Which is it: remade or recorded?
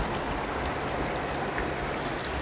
recorded